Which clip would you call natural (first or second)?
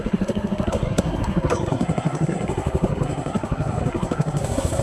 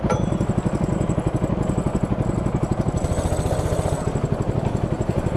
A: second